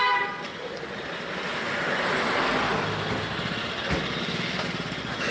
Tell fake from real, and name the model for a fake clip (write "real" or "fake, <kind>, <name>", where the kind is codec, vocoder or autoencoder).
real